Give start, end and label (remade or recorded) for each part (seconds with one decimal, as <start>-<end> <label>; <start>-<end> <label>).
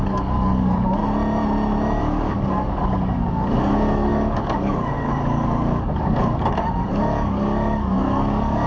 0.0-1.0 remade; 1.0-2.0 recorded; 2.0-8.7 remade